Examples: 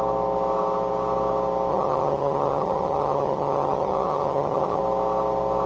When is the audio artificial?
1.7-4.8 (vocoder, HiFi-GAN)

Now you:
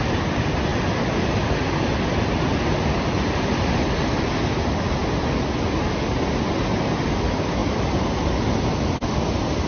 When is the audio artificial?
none

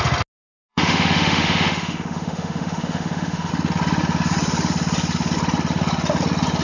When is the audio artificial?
0.7-3.5 (autoencoder, DAC-VAE)

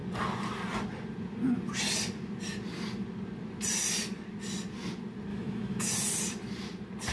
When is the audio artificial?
5.3-5.9 (autoencoder, DAC-VAE)

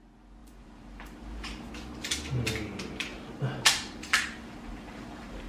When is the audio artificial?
0.4-1.7 (vocoder, BigVGAN v2); 3.1-5.5

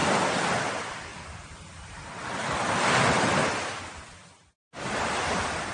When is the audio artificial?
none

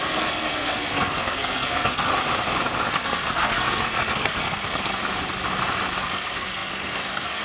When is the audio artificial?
0.0-2.1 (codec, SNAC); 2.9-5.0; 6.0-7.4

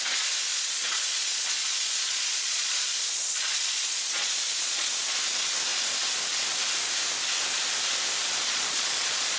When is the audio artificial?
0.5-4.9 (vocoder, Vocos); 8.4-9.4